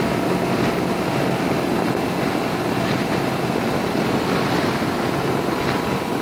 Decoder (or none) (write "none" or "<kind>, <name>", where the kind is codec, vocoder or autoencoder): none